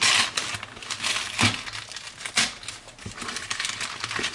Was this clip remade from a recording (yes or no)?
no